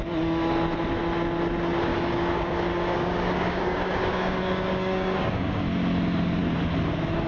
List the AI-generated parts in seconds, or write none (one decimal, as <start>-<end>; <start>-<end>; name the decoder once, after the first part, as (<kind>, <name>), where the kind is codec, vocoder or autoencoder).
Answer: 1.9-5.6 (codec, DAC)